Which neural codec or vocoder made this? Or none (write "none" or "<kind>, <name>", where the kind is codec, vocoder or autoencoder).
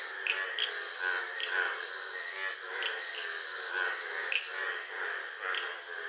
none